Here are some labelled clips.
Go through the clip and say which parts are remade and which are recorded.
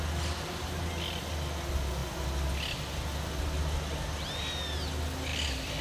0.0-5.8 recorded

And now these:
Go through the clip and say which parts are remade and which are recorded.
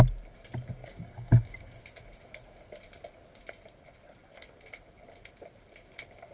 0.0-0.8 recorded; 0.8-1.8 remade; 1.8-6.3 recorded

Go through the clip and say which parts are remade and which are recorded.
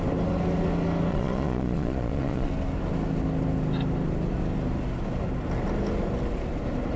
0.0-1.1 recorded; 1.1-2.5 remade; 2.5-7.0 recorded